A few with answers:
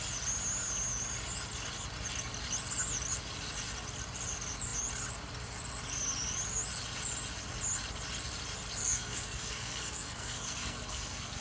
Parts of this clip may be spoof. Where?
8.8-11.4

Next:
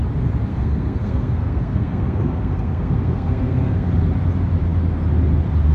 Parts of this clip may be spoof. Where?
0.5-3.9